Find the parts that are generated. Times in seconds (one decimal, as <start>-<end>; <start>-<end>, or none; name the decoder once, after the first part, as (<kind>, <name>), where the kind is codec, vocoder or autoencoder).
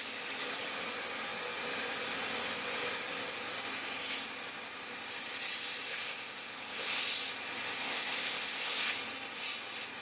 5.9-7.0 (codec, ZipCodec); 7.8-8.9